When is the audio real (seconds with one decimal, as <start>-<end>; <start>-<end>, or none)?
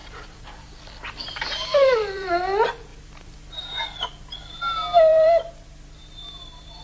2.3-2.9; 3.6-5.1